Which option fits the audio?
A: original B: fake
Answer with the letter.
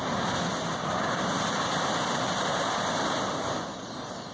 A